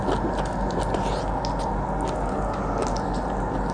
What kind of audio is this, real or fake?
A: real